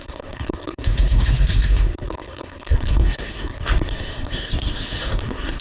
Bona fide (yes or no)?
no